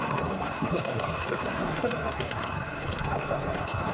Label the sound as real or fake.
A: fake